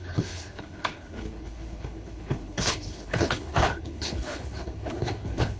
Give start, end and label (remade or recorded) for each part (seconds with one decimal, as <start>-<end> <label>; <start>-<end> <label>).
0.0-5.6 remade